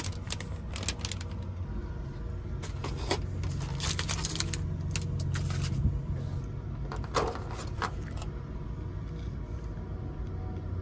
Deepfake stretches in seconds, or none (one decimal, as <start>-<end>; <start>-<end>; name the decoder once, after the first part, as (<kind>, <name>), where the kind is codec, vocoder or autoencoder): none